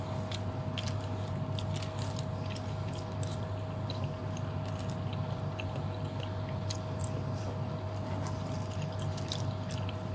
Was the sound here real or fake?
real